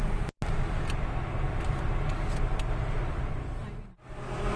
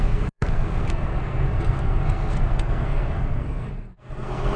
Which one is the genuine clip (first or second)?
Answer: first